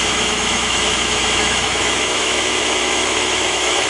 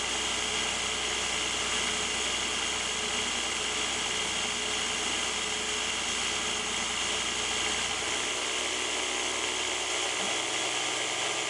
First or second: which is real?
second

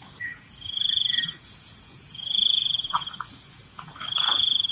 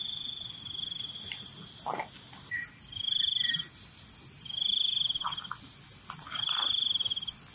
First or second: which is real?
second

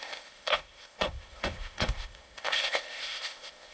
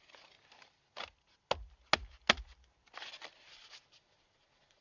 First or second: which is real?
second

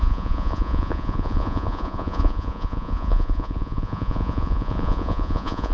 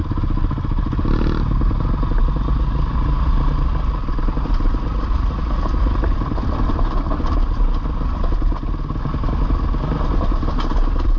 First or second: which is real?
second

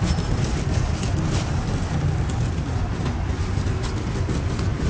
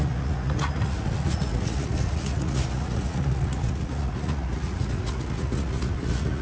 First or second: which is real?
first